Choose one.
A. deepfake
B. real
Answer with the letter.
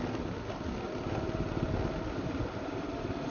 B